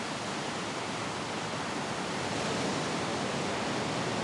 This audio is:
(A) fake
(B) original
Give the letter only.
B